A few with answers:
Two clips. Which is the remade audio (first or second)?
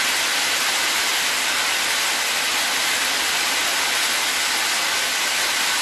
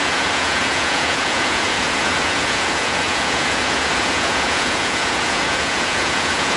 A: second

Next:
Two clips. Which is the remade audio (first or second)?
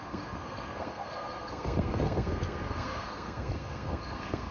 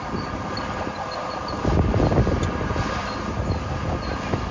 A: first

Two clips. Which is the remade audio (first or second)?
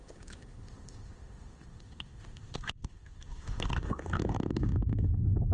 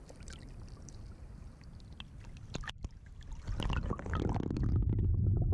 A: first